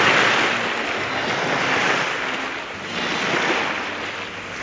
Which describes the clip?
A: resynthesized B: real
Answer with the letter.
B